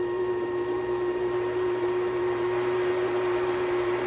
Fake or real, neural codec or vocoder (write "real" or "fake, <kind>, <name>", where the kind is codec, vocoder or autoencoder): fake, vocoder, BigVGAN v2